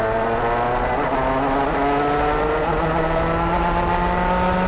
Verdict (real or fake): real